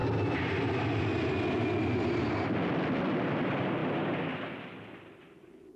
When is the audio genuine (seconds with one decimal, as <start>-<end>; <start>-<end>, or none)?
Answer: 0.0-5.8

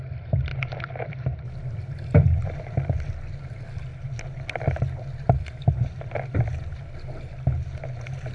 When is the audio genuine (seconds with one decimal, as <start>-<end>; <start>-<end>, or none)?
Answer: 0.0-0.5; 3.1-8.3

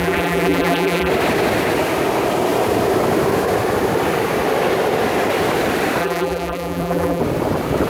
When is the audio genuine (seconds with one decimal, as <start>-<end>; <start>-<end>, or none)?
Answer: 1.1-6.0; 7.2-7.9

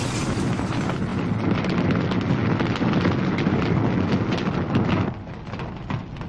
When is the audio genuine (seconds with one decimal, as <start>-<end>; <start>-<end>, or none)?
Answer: 0.0-6.3

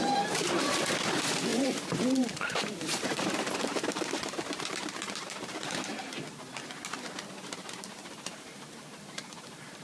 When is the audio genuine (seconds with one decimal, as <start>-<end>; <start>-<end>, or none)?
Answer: 5.9-7.3